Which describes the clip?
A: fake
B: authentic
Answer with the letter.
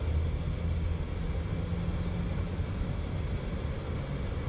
B